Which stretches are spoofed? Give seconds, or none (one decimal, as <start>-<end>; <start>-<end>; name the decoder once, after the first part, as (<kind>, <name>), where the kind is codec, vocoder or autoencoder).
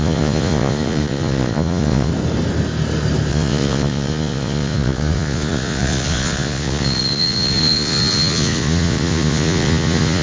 0.0-2.1 (vocoder, Vocos); 3.3-10.2